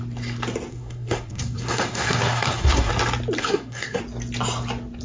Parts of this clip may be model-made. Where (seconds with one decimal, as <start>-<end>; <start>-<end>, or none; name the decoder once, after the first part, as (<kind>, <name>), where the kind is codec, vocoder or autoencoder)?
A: 0.7-2.9 (codec, SNAC); 3.4-4.0